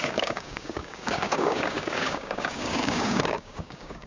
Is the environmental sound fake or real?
fake